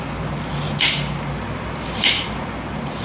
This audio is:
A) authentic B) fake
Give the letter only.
A